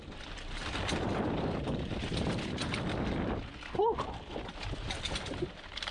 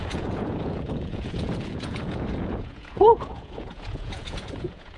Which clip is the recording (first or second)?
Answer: first